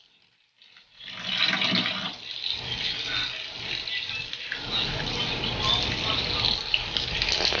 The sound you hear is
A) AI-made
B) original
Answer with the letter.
B